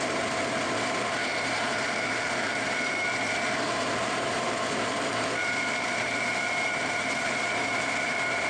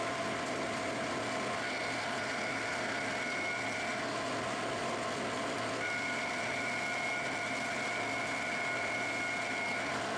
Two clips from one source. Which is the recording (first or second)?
second